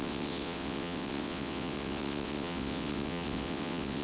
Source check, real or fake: fake